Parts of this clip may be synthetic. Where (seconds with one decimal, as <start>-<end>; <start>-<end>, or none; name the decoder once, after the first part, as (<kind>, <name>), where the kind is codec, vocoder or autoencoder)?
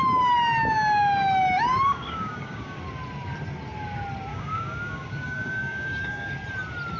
1.7-2.8 (codec, DAC); 4.3-6.3